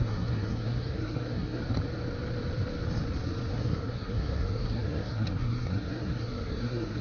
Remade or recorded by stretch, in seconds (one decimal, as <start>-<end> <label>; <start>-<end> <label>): 0.0-1.6 remade; 1.6-3.5 recorded; 3.5-7.0 remade